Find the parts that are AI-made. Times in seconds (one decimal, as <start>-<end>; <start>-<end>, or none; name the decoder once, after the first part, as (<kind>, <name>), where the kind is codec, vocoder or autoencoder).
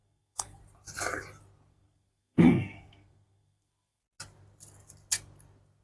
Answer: 0.0-0.6 (codec, SNAC); 1.7-4.0